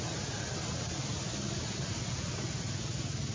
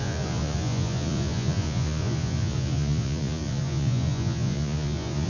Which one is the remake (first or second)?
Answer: second